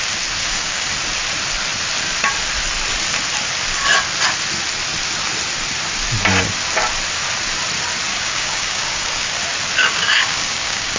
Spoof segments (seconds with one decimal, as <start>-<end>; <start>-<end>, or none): 0.4-0.9; 8.1-9.3; 9.8-11.0